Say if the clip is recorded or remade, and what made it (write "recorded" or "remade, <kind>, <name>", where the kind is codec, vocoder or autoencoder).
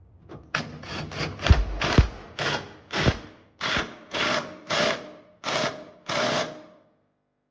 recorded